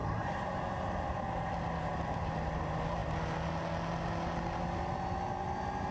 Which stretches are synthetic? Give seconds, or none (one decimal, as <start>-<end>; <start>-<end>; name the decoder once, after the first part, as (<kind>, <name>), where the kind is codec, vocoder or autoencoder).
none